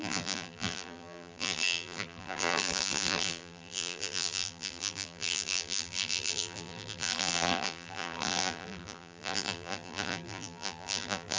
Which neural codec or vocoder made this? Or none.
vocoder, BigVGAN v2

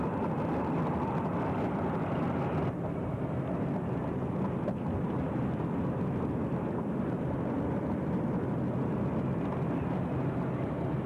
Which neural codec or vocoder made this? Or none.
none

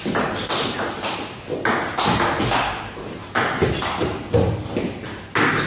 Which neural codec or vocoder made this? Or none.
none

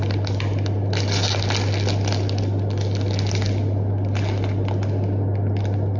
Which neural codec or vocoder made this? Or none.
none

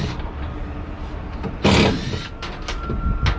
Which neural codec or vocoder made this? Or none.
none